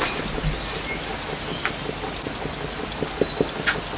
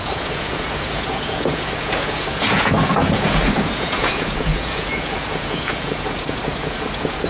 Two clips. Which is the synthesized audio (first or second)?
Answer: second